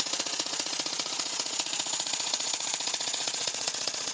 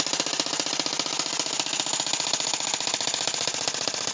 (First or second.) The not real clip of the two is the first